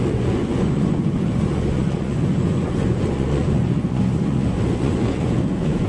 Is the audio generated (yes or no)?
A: yes